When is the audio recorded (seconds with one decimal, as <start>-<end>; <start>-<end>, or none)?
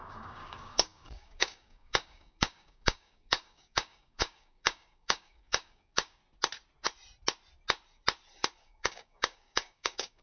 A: 6.2-8.6